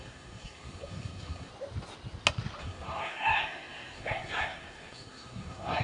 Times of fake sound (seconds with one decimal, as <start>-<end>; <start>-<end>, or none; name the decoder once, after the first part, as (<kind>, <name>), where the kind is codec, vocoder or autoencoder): 0.0-1.5 (codec, SNAC); 2.6-5.8